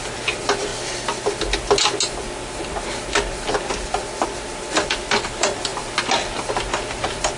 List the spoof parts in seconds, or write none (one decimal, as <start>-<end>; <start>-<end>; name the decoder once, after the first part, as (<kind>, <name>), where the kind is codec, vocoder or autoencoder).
0.0-0.7 (vocoder, BigVGAN v2); 5.1-5.7